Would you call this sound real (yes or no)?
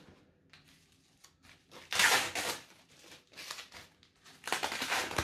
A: yes